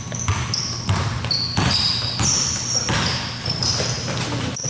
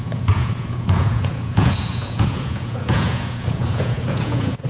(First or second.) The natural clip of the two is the first